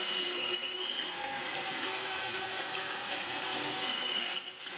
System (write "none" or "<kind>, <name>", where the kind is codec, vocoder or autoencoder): codec, SNAC